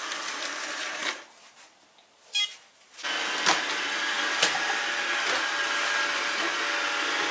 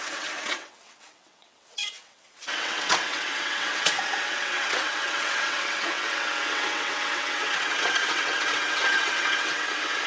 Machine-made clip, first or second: second